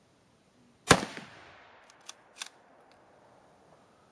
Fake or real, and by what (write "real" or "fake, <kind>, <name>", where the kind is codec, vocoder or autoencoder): real